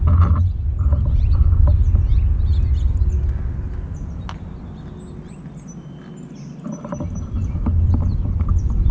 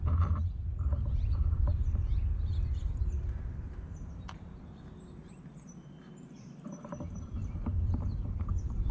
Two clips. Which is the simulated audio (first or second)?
second